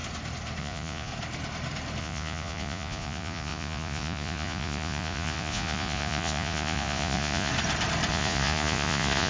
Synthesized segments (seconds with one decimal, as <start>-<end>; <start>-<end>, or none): 0.6-1.1; 2.0-7.5; 8.1-9.3